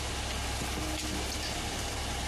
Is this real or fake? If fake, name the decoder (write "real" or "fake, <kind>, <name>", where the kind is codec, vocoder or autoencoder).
real